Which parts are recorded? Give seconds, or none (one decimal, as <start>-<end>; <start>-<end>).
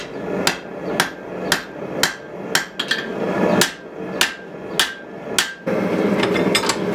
0.0-6.9